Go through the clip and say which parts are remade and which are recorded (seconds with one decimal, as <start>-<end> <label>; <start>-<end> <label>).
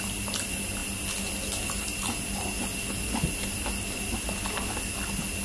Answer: 0.0-5.4 recorded